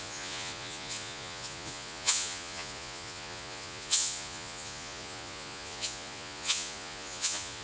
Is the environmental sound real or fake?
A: fake